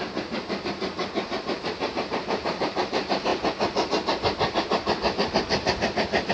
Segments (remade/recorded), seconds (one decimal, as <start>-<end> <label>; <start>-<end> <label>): 0.0-1.0 remade; 1.0-1.9 recorded; 1.9-3.3 remade; 3.3-6.3 recorded